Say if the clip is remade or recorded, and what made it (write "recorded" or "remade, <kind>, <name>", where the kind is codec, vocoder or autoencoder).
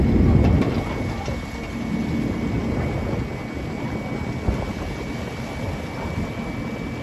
recorded